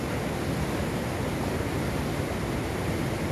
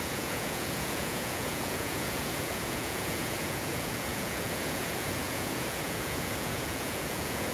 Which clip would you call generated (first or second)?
second